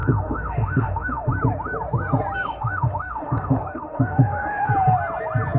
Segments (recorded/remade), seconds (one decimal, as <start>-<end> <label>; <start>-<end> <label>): 0.0-1.3 remade; 1.3-2.4 recorded; 2.4-4.7 remade; 4.7-5.6 recorded

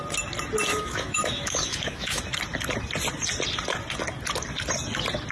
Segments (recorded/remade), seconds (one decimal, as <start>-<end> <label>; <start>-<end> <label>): 0.0-0.7 recorded; 0.7-2.2 remade; 2.2-5.3 recorded

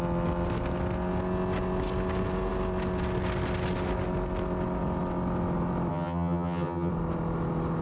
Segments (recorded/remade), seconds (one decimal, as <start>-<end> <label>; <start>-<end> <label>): 0.0-5.9 recorded; 5.9-6.9 remade; 6.9-7.8 recorded

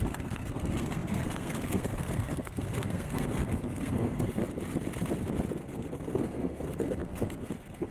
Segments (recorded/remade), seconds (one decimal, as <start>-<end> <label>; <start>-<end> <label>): 0.0-4.4 remade; 4.4-5.6 recorded; 5.6-7.9 remade

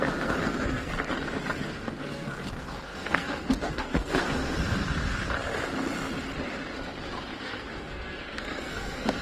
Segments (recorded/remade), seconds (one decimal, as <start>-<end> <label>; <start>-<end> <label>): 0.0-0.9 remade; 0.9-1.7 recorded; 1.7-4.4 remade; 4.4-7.4 recorded; 7.4-9.2 remade